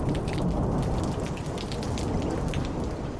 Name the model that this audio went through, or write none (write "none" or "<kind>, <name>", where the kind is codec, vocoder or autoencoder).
none